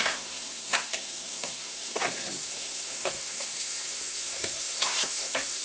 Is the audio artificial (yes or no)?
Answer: yes